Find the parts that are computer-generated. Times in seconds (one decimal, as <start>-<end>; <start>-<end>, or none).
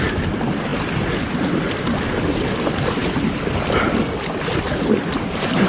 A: none